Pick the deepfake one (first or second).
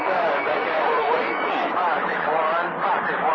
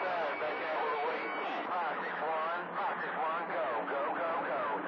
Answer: first